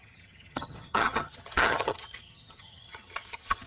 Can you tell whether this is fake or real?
fake